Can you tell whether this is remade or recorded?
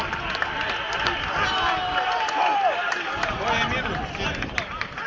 recorded